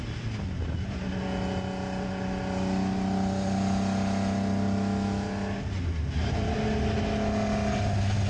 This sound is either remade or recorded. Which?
recorded